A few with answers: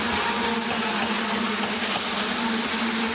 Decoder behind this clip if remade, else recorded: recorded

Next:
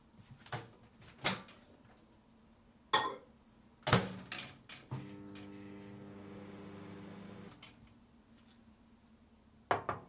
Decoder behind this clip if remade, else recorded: recorded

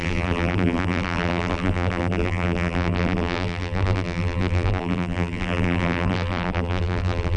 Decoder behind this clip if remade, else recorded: remade, vocoder, BigVGAN v2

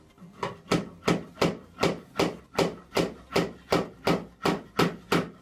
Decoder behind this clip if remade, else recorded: recorded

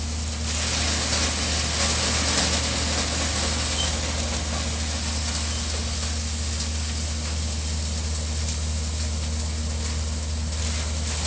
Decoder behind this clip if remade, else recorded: recorded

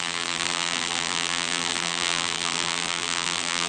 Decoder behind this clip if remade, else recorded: remade, vocoder, BigVGAN v2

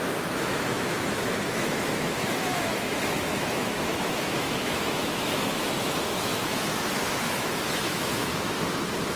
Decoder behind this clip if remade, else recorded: remade, autoencoder, DAC-VAE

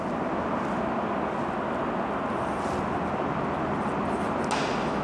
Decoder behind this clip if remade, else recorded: recorded